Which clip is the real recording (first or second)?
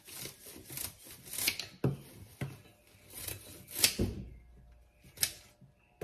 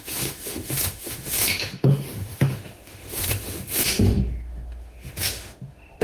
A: first